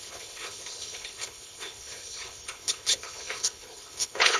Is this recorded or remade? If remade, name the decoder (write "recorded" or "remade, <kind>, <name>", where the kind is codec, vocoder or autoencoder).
remade, codec, HILCodec